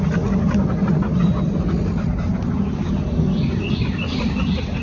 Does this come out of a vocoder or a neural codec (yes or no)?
no